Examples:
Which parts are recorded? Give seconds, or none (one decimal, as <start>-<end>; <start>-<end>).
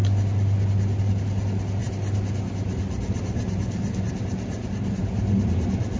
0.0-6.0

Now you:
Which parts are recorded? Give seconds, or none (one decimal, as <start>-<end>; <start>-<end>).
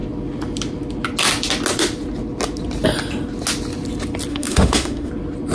0.0-4.3; 5.1-5.5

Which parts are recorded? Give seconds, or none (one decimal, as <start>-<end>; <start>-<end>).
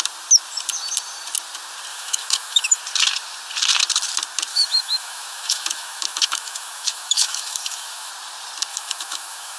0.0-1.9; 2.8-4.5; 8.1-8.7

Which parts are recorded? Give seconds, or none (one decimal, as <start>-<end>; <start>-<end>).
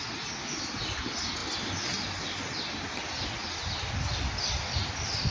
0.0-5.3